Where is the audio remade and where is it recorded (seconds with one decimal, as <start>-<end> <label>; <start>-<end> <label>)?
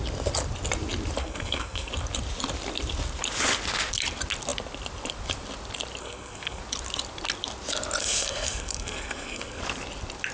0.0-1.2 recorded; 1.2-1.9 remade; 1.9-6.0 recorded; 6.0-6.6 remade; 6.6-8.0 recorded; 8.0-9.6 remade; 9.6-10.3 recorded